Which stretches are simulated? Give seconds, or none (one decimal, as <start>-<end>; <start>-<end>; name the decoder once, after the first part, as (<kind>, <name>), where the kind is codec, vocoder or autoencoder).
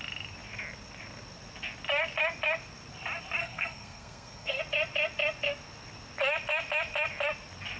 3.4-4.6 (codec, SNAC)